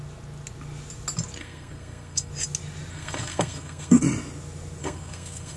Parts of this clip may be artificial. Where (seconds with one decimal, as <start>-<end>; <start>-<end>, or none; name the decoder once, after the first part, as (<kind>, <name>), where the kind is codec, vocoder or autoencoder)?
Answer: 1.4-2.3 (codec, SNAC); 2.9-4.0; 4.8-5.6